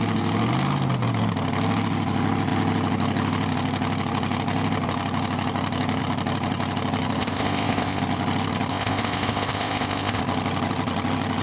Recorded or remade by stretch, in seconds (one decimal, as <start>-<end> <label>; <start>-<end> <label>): 0.0-7.2 recorded; 7.2-8.0 remade; 8.0-8.7 recorded; 8.7-10.2 remade; 10.2-11.4 recorded